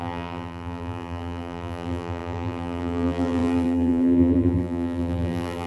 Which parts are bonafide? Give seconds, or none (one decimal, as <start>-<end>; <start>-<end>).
none